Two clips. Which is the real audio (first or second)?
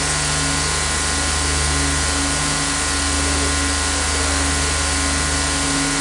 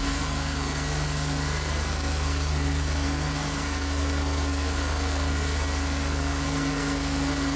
first